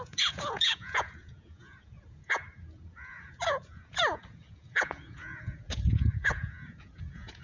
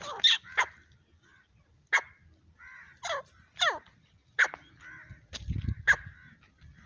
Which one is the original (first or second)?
second